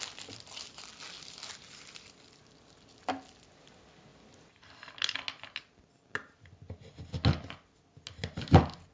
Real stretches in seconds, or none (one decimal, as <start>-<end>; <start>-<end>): 0.0-8.9